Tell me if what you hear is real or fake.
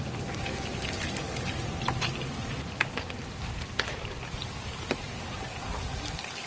fake